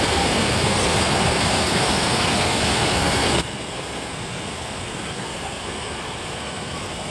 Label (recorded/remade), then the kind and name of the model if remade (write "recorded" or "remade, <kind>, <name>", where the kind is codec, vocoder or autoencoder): remade, codec, SNAC